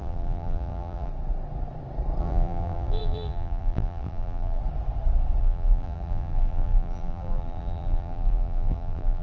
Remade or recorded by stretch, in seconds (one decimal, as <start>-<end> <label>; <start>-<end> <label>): 0.0-1.1 remade; 1.1-2.2 recorded; 2.2-4.6 remade; 4.6-5.4 recorded; 5.4-9.2 remade